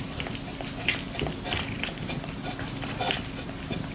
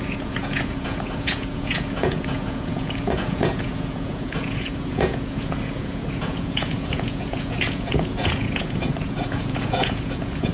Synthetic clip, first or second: second